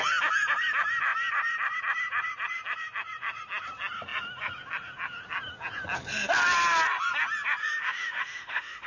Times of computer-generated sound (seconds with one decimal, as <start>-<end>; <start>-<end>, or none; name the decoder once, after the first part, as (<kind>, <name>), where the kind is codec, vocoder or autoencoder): 7.6-8.9 (autoencoder, DAC-VAE)